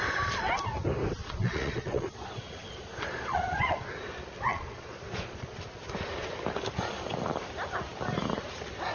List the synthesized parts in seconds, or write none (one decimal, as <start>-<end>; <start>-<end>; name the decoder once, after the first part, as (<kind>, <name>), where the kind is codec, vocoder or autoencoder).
1.2-3.8 (vocoder, Vocos); 4.5-5.6